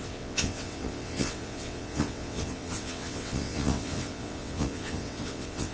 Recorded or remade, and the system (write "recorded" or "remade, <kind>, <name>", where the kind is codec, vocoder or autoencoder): remade, vocoder, WaveNeXt